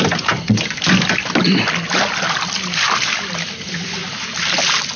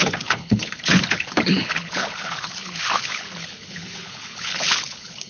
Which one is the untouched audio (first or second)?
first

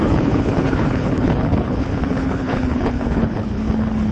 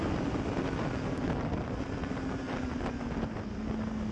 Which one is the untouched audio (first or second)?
second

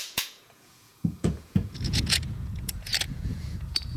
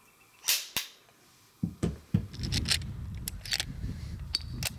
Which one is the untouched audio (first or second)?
second